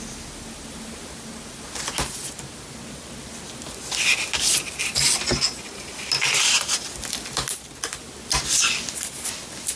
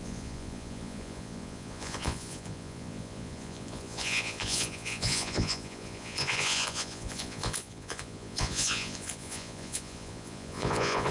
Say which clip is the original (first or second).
first